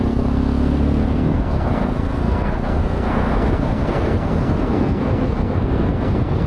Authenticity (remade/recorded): remade